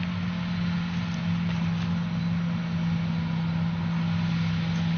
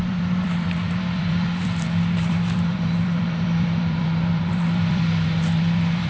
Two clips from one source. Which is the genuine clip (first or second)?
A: first